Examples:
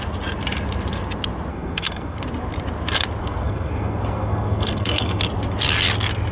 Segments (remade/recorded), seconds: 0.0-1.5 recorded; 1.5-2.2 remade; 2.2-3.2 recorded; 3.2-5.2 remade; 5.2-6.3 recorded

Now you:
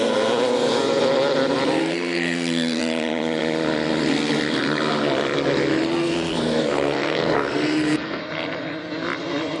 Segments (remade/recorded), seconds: 0.0-1.8 recorded; 1.8-2.8 remade; 2.8-6.0 recorded; 6.0-8.2 remade; 8.2-9.6 recorded

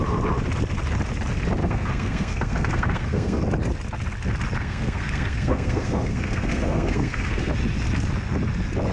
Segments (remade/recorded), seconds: 0.0-1.6 recorded; 1.6-3.4 remade; 3.4-4.6 recorded; 4.6-7.5 remade; 7.5-8.9 recorded

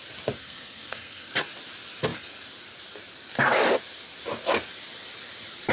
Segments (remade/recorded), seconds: 0.0-0.4 recorded; 0.4-1.3 remade; 1.3-5.7 recorded

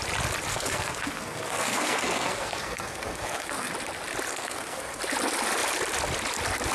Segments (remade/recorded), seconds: 0.0-0.5 recorded; 0.5-3.7 remade; 3.7-4.3 recorded; 4.3-5.0 remade; 5.0-6.7 recorded

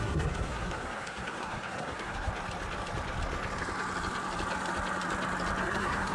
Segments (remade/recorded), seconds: 0.0-2.3 remade; 2.3-5.6 recorded; 5.6-6.1 remade